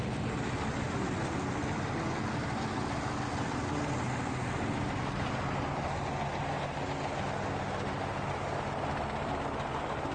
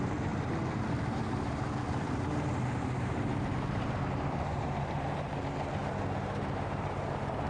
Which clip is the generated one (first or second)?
second